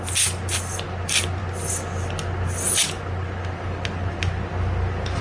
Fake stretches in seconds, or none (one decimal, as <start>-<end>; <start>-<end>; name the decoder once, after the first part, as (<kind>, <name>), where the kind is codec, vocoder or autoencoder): none